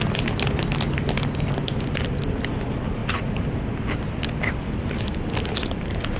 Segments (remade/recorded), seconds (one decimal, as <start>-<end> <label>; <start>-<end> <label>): 0.0-6.2 recorded